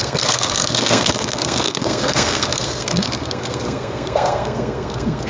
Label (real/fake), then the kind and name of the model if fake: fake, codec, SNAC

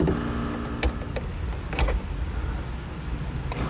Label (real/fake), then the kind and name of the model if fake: real